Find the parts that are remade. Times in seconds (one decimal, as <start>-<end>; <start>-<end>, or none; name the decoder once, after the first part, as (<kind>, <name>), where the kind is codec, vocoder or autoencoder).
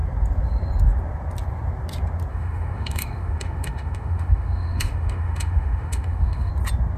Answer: 2.3-6.5 (autoencoder, DAC-VAE)